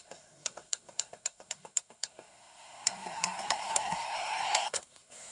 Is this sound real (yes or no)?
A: no